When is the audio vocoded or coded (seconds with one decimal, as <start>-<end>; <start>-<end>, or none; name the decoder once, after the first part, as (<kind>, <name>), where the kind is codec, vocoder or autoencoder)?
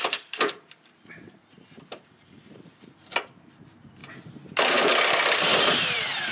0.0-4.0 (vocoder, BigVGAN v2); 4.6-6.3